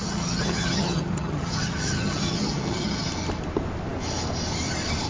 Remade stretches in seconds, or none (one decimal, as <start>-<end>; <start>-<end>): 0.0-3.1